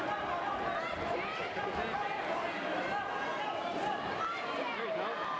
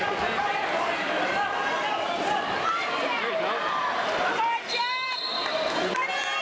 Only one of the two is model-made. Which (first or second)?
second